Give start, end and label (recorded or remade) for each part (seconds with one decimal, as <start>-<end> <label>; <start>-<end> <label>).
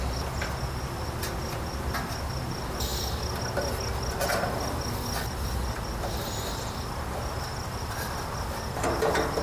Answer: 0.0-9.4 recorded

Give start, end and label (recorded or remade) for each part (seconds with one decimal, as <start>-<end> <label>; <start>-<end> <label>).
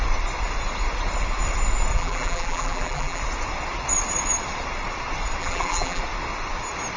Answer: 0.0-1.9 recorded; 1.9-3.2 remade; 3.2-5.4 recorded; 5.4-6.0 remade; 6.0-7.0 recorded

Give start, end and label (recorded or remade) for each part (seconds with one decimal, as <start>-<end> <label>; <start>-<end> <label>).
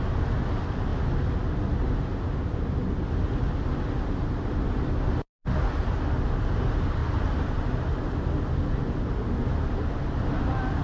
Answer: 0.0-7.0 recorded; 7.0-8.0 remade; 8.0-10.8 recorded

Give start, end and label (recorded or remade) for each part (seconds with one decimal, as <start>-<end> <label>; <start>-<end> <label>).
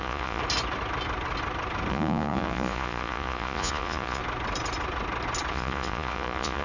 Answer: 0.0-0.4 remade; 0.4-1.9 recorded; 1.9-4.2 remade; 4.2-5.5 recorded; 5.5-6.6 remade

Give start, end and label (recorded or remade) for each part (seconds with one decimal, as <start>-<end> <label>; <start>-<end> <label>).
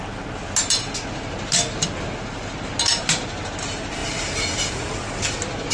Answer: 0.0-5.7 recorded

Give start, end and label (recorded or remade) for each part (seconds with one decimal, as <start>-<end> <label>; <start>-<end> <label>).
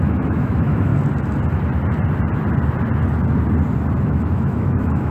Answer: 0.0-0.9 remade; 0.9-4.0 recorded; 4.0-5.1 remade